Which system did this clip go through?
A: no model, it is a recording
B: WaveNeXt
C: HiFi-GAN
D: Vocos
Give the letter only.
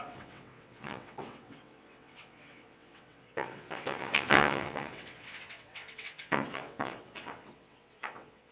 B